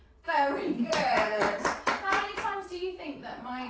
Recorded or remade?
remade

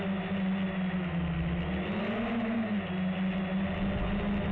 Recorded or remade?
recorded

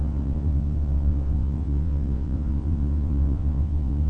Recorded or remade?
remade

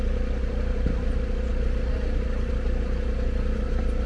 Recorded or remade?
recorded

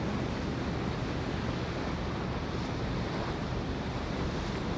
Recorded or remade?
recorded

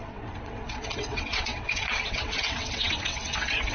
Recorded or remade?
remade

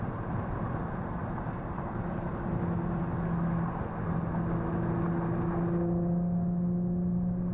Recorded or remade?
recorded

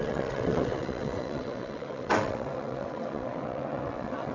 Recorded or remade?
remade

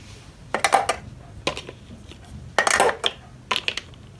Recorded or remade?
recorded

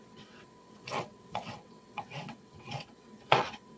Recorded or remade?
remade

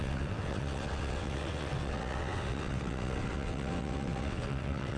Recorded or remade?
remade